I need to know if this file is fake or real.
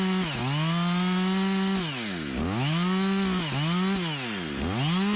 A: real